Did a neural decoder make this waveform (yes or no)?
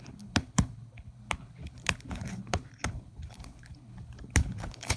yes